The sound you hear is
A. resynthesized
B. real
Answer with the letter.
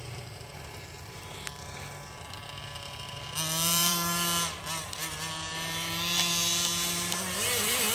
A